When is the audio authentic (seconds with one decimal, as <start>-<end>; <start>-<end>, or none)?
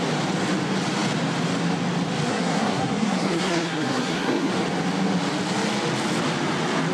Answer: 0.0-2.3; 4.5-6.9